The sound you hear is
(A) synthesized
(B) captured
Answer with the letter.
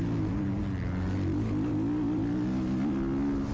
B